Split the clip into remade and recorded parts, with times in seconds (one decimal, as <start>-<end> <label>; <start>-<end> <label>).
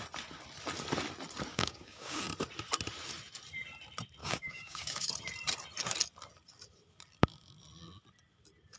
0.0-1.5 recorded; 1.5-2.2 remade; 2.2-4.2 recorded; 4.2-5.1 remade; 5.1-8.8 recorded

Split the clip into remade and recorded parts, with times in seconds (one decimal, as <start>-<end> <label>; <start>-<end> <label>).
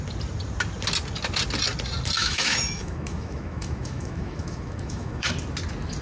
0.0-2.2 recorded; 2.2-5.3 remade; 5.3-6.0 recorded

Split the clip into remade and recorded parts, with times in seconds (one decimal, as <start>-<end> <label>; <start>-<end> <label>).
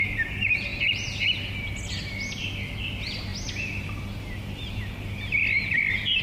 0.0-3.3 recorded; 3.3-4.8 remade; 4.8-5.4 recorded; 5.4-6.2 remade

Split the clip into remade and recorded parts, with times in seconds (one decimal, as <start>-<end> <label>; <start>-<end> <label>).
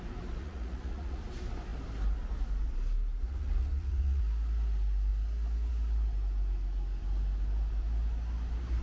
0.0-0.4 recorded; 0.4-1.2 remade; 1.2-3.2 recorded; 3.2-4.2 remade; 4.2-8.8 recorded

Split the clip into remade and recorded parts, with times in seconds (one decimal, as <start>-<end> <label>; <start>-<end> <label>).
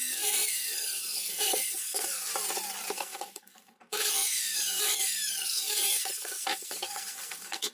0.0-2.3 remade; 2.3-2.9 recorded; 2.9-7.7 remade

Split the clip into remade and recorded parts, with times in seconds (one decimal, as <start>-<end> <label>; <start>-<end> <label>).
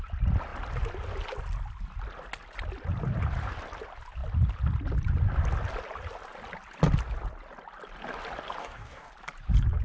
0.0-8.6 recorded; 8.6-9.1 remade; 9.1-9.8 recorded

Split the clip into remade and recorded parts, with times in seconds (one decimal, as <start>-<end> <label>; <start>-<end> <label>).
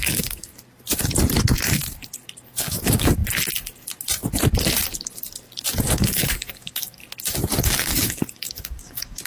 0.0-0.5 remade; 0.5-2.6 recorded; 2.6-3.2 remade; 3.2-5.8 recorded; 5.8-7.0 remade; 7.0-7.6 recorded; 7.6-9.3 remade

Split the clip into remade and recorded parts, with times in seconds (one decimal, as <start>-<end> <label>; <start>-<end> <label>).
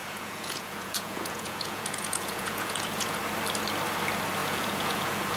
0.0-3.2 remade; 3.2-4.4 recorded; 4.4-5.4 remade